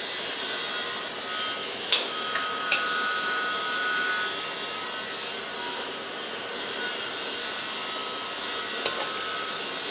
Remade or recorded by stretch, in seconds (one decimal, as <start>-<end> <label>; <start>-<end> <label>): 0.0-1.6 recorded; 1.6-4.1 remade; 4.1-9.9 recorded